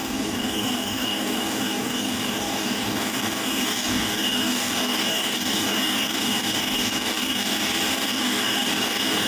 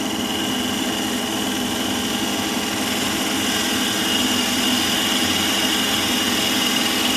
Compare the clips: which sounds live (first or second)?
second